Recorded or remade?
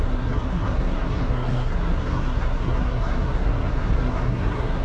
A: remade